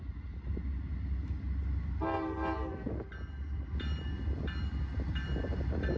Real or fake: real